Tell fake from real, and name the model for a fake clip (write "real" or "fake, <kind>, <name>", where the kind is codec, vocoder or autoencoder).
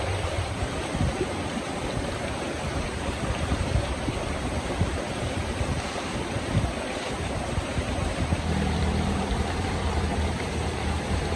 fake, vocoder, BigVGAN v2